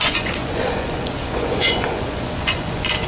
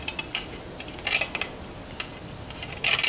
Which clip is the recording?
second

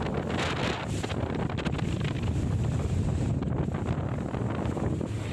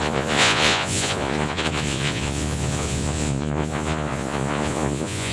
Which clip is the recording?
first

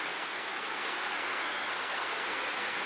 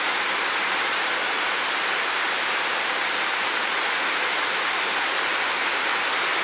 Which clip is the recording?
second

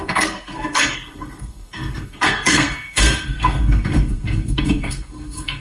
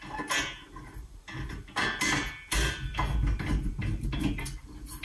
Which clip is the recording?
second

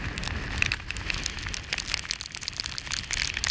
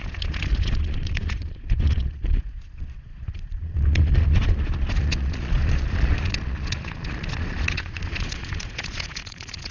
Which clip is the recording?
first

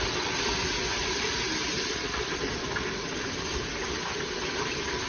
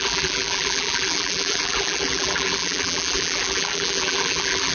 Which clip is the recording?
first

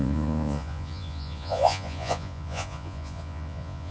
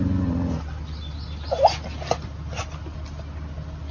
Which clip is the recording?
second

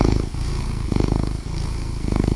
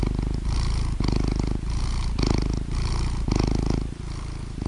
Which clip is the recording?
second